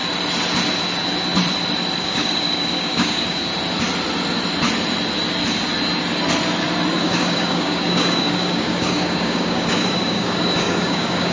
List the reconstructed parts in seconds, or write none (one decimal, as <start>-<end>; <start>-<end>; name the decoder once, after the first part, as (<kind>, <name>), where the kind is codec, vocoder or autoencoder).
2.0-3.4 (codec, DAC); 7.0-11.3